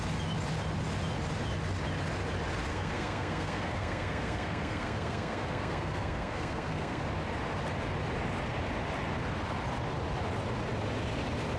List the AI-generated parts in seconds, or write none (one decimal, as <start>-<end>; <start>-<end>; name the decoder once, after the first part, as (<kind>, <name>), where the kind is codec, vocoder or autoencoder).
2.7-7.0 (codec, SNAC)